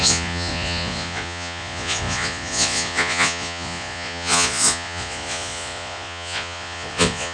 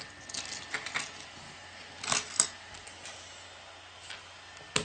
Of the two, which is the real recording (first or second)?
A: second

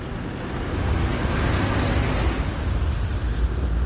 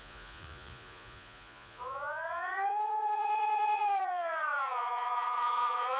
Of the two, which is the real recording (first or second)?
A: first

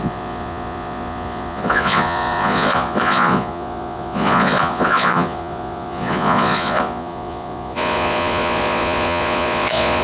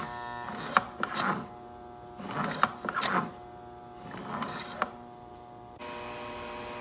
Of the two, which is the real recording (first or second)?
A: second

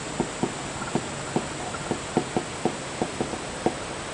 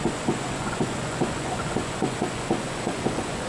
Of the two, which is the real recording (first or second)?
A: first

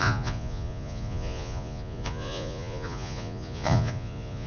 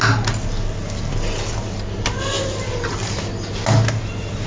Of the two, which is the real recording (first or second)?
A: second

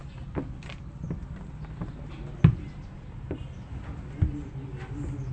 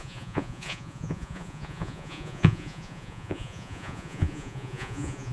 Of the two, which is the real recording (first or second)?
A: first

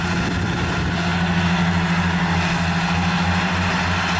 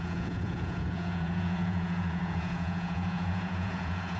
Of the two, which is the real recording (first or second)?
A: first